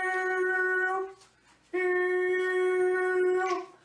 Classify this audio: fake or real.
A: real